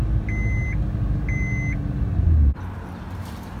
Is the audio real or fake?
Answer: real